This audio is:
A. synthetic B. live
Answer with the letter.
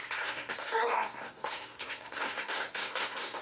A